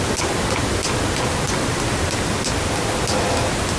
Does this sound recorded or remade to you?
recorded